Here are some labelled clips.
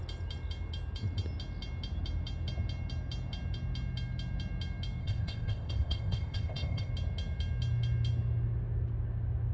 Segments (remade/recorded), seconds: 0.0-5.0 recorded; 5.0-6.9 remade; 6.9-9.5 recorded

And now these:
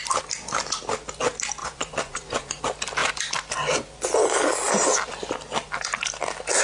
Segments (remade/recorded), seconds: 0.0-1.6 recorded; 1.6-2.6 remade; 2.6-6.6 recorded

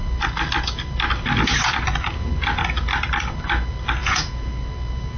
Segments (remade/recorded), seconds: 0.0-4.0 recorded; 4.0-4.5 remade; 4.5-5.2 recorded